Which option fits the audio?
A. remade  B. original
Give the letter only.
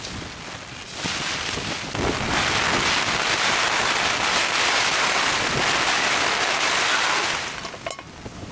B